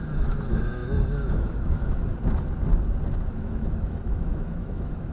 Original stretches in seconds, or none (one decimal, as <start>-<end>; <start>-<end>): 2.1-3.3